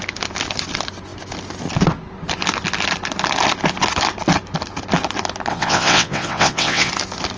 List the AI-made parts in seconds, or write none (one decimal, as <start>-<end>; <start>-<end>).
5.5-6.9